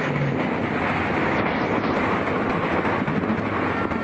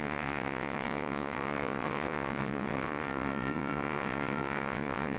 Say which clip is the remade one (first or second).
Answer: second